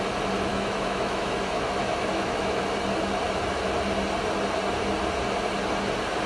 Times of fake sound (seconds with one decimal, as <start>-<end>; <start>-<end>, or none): 0.5-2.6